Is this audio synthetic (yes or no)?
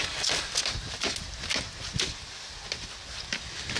no